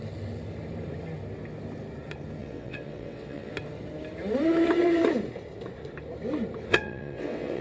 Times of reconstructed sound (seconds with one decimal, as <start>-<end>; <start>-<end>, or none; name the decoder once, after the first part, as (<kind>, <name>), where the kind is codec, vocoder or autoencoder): 2.4-3.5 (vocoder, WaveNeXt); 6.7-7.6